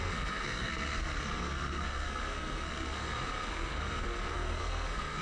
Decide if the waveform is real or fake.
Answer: fake